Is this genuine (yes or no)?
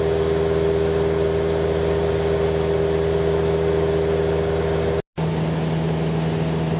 yes